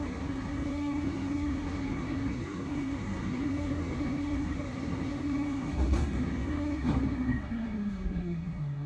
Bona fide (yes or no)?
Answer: no